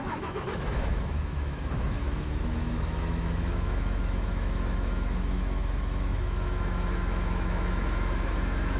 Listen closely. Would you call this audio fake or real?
fake